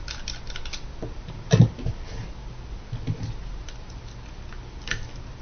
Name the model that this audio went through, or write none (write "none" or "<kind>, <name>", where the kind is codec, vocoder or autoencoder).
none